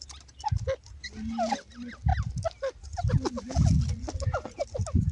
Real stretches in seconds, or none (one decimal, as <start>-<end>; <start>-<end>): 0.0-5.1